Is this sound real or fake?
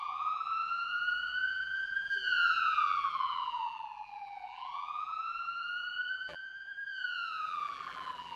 fake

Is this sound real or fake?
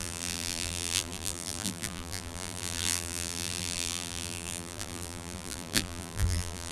fake